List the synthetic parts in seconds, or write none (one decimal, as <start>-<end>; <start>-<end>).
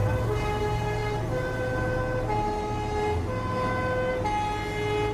none